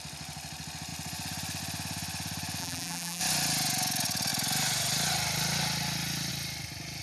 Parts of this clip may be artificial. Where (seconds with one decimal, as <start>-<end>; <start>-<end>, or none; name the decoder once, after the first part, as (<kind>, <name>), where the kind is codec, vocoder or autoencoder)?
2.6-3.2 (vocoder, BigVGAN v2)